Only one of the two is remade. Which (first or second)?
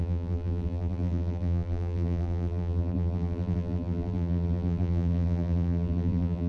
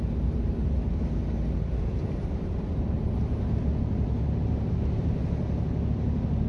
first